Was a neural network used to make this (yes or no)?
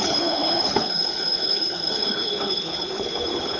yes